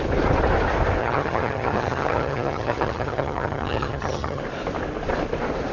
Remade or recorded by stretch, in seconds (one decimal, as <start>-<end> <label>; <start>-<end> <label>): 0.0-1.0 recorded; 1.0-4.4 remade; 4.4-5.7 recorded